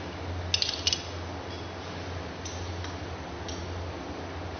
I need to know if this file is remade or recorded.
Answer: recorded